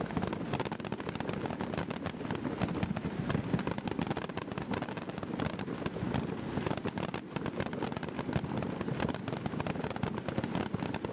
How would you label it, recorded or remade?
recorded